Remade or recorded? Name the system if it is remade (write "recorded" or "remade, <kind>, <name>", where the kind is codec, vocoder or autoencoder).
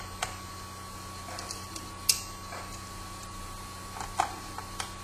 recorded